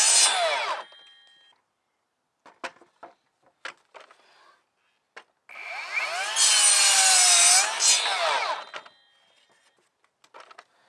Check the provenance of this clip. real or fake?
real